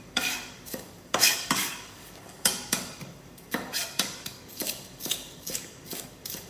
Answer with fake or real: fake